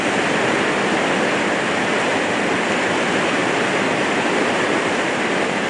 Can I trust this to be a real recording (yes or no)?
yes